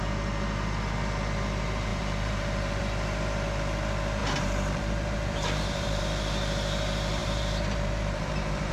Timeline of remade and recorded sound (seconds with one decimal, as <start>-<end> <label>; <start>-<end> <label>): 0.0-1.9 recorded; 1.9-2.8 remade; 2.8-4.2 recorded; 4.2-6.0 remade; 6.0-7.2 recorded; 7.2-8.7 remade